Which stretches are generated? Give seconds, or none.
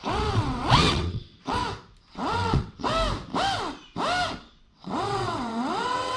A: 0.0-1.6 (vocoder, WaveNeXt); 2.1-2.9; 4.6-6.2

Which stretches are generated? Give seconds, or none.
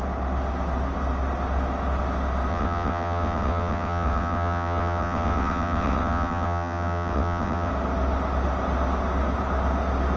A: 2.5-7.7 (vocoder, WaveNeXt)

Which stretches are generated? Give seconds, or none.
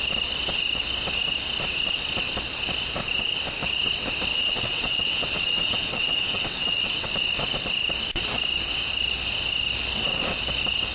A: 4.3-7.1 (vocoder, WaveNeXt)